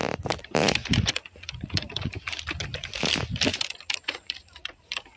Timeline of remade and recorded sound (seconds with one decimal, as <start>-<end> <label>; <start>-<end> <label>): 0.0-0.8 recorded; 0.8-2.1 remade; 2.1-3.5 recorded; 3.5-5.2 remade